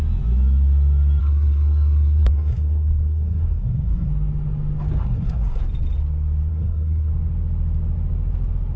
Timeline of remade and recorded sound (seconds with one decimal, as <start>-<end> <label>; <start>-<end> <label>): 0.0-1.2 recorded; 1.2-4.1 remade; 4.1-5.0 recorded; 5.0-5.6 remade; 5.6-6.5 recorded; 6.5-7.1 remade; 7.1-8.8 recorded